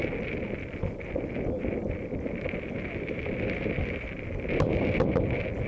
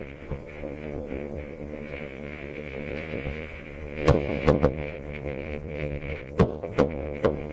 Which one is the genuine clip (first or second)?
first